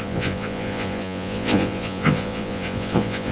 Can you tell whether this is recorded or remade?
remade